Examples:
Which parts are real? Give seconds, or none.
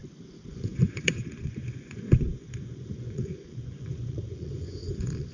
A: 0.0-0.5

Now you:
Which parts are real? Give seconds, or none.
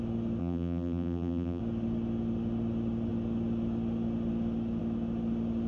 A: 0.0-0.4; 1.6-5.7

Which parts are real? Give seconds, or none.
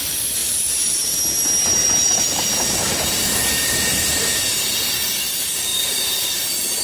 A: 0.0-0.4; 1.0-1.8; 4.2-5.7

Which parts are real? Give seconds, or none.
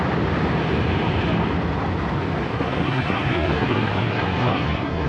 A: 0.0-2.5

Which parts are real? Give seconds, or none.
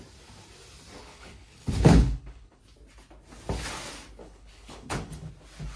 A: 0.0-1.0; 2.6-4.2; 5.3-5.8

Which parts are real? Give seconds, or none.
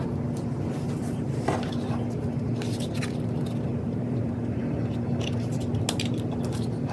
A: 0.0-1.0; 3.1-3.7; 4.6-6.9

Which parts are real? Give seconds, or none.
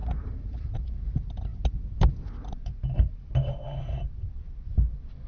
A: 0.9-5.3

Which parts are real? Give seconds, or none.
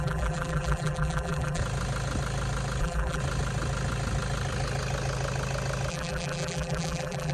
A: 1.6-2.8; 3.2-5.9